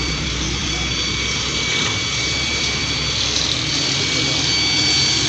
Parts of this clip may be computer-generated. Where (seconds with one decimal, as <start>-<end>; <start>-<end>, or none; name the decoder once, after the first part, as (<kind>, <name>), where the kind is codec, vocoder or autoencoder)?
0.0-2.8 (vocoder, BigVGAN v2)